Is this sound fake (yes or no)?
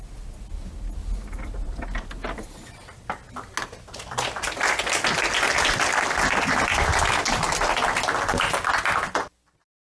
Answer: no